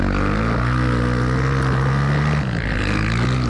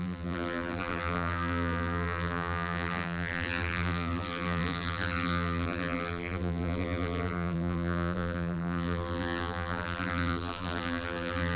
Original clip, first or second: first